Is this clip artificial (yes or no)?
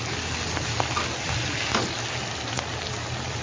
no